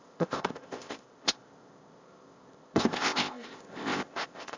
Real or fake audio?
fake